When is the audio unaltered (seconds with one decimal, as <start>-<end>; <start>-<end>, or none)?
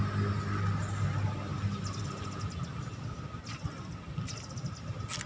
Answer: 0.0-5.3